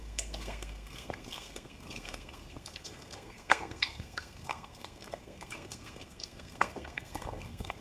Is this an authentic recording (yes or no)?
no